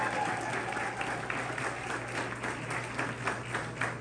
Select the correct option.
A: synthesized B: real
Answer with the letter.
B